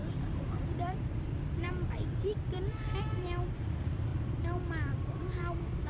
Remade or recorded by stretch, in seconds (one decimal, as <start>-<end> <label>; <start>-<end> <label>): 0.0-5.9 remade

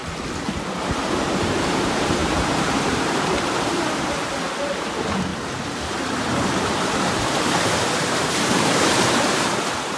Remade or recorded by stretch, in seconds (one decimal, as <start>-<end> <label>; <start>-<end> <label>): 0.0-1.7 recorded; 1.7-5.3 remade; 5.3-6.0 recorded; 6.0-10.0 remade

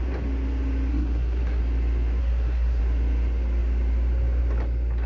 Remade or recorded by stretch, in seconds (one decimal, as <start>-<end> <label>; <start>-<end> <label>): 0.0-0.9 recorded; 0.9-1.6 remade; 1.6-2.2 recorded; 2.2-2.8 remade; 2.8-5.1 recorded

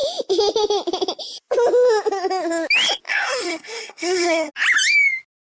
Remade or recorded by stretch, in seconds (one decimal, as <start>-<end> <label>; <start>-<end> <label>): 0.0-3.1 recorded; 3.1-4.5 remade; 4.5-5.6 recorded